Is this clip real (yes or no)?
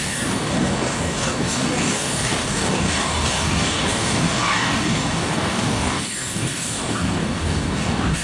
no